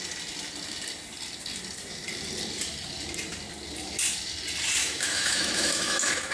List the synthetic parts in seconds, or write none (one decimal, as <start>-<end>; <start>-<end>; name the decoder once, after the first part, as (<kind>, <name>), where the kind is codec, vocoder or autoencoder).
4.8-6.3 (autoencoder, DAC-VAE)